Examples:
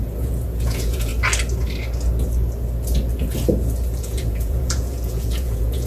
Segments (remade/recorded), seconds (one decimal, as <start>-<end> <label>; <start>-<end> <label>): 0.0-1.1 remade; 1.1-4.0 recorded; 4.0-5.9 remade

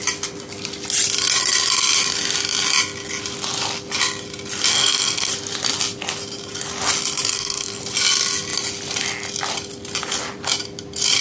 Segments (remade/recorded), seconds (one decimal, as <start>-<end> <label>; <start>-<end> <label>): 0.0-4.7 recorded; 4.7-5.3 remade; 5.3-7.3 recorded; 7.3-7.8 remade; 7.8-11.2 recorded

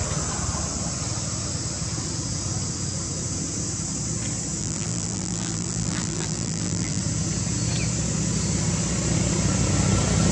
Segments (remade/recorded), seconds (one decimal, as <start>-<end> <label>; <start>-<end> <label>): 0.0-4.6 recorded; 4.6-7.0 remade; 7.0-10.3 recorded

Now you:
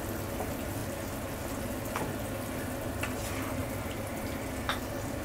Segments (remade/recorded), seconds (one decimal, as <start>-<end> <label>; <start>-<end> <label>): 0.0-3.6 recorded; 3.6-4.4 remade; 4.4-5.2 recorded

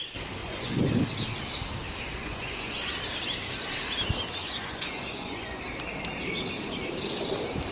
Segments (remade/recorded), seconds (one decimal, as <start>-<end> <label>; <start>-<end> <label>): 0.0-0.4 recorded; 0.4-0.9 remade; 0.9-2.2 recorded; 2.2-2.9 remade; 2.9-4.4 recorded; 4.4-5.6 remade; 5.6-7.7 recorded

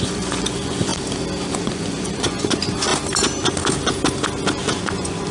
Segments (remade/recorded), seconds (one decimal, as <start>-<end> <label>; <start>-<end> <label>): 0.0-0.9 remade; 0.9-1.5 recorded; 1.5-2.9 remade; 2.9-4.8 recorded; 4.8-5.3 remade

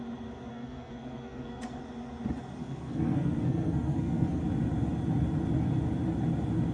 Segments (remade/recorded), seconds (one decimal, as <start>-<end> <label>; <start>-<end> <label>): 0.0-0.5 recorded; 0.5-1.8 remade; 1.8-2.6 recorded; 2.6-4.4 remade; 4.4-6.7 recorded

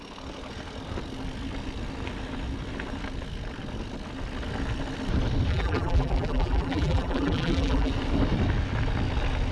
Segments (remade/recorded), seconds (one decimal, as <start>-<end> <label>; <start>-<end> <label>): 0.0-5.5 recorded; 5.5-7.9 remade; 7.9-9.5 recorded